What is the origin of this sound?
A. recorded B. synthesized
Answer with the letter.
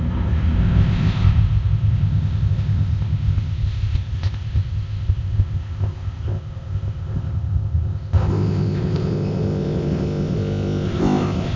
B